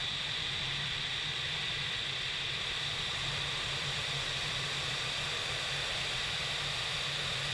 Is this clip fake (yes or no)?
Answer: yes